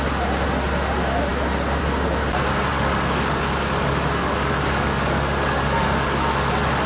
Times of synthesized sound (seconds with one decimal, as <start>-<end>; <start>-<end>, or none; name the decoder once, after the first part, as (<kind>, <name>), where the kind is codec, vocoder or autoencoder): 2.7-6.9 (codec, DAC)